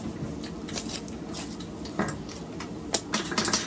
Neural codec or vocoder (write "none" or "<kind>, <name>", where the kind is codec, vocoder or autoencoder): none